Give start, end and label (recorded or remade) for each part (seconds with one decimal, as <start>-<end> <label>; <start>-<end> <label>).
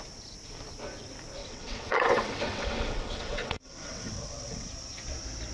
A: 0.0-1.4 recorded; 1.4-4.7 remade; 4.7-5.5 recorded